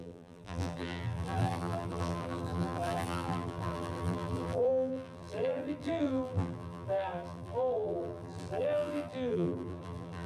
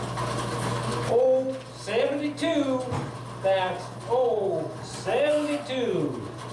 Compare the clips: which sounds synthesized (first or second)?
first